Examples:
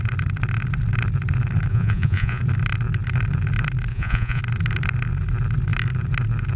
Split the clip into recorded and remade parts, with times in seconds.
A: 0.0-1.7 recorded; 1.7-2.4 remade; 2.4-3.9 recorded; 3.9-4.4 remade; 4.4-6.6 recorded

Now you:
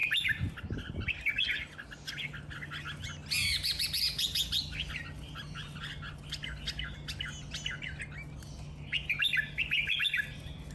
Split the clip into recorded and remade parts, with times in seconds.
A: 0.0-10.7 recorded